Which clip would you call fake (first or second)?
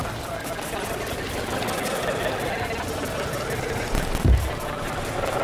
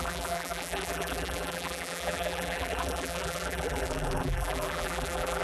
second